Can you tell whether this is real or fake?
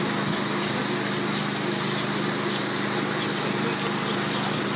real